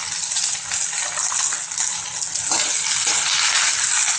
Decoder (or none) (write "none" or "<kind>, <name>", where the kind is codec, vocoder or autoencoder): none